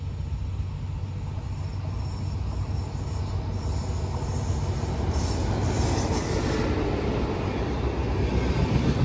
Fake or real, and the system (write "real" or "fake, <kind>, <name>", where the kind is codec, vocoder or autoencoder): real